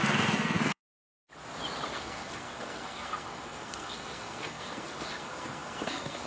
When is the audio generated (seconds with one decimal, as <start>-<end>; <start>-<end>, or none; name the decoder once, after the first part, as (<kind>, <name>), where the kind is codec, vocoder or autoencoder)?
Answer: 0.0-0.8 (codec, SNAC); 1.9-6.3

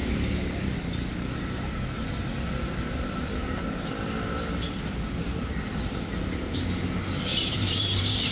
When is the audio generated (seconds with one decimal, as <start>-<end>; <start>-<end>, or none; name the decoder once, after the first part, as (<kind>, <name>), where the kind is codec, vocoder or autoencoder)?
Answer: 3.4-3.9 (vocoder, BigVGAN v2); 7.3-8.3